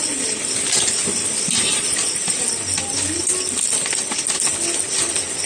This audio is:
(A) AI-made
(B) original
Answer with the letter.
B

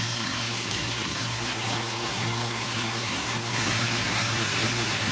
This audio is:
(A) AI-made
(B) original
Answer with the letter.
A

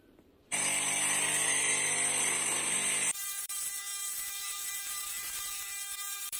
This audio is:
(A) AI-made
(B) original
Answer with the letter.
A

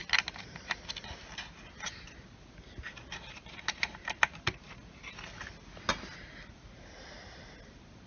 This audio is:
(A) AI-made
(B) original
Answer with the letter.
B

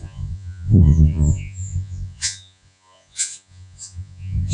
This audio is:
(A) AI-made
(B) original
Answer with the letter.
A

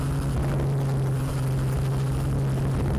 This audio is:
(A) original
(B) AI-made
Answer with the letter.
A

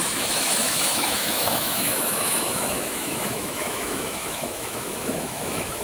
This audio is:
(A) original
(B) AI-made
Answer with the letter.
B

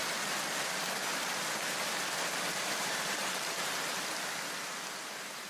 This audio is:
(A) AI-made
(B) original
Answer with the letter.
B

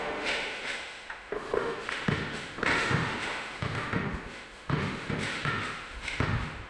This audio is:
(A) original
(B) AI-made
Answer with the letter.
B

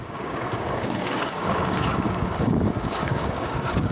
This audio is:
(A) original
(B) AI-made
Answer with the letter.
B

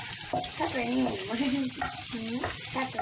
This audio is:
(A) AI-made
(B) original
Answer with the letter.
B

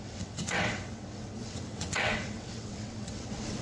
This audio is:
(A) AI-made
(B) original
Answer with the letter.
A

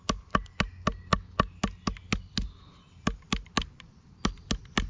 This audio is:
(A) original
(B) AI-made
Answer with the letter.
A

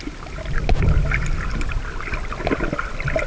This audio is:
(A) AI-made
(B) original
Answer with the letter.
B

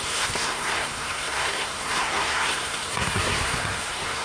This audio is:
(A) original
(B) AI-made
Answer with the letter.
B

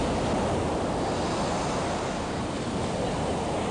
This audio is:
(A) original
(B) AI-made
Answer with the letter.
A